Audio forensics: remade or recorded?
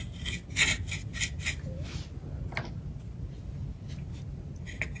recorded